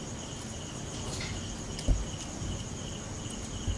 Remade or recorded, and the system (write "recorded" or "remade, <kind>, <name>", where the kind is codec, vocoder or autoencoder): recorded